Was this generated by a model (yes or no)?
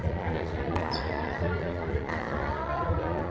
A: yes